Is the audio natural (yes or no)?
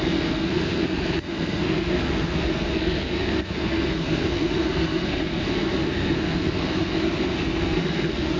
no